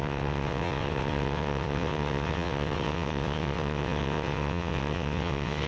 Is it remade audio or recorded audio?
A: remade